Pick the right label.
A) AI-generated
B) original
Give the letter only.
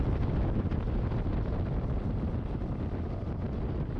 B